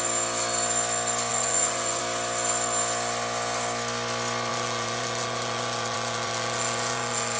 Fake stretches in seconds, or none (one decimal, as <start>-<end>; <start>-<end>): 1.3-2.0; 4.5-7.4